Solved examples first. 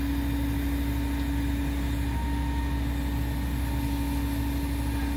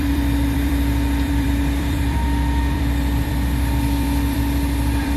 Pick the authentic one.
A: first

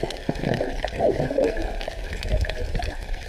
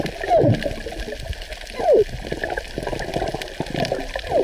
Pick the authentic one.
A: second